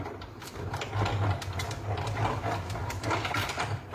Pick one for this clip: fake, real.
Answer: real